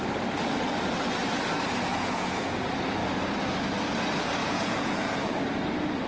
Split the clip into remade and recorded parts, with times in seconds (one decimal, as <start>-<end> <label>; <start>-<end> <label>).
0.0-1.9 recorded; 1.9-2.5 remade; 2.5-4.4 recorded; 4.4-5.4 remade; 5.4-6.1 recorded